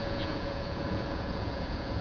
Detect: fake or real fake